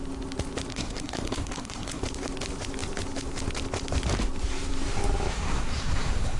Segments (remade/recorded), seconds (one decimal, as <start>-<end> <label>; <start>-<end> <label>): 0.0-0.7 recorded; 0.7-2.0 remade; 2.0-5.3 recorded; 5.3-6.4 remade